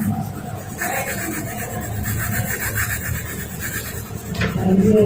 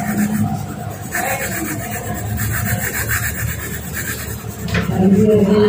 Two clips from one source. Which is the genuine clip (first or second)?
second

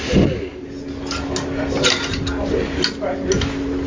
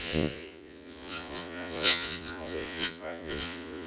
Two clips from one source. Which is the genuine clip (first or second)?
first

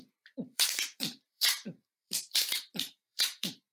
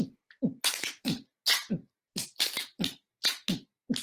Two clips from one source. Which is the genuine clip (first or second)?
second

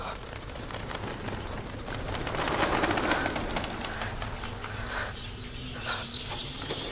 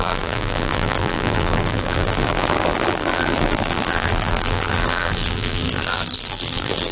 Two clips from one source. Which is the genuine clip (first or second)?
first